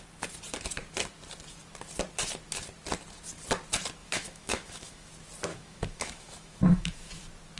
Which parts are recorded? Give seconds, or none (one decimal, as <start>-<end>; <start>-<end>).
0.0-4.0; 5.1-5.5; 7.0-7.6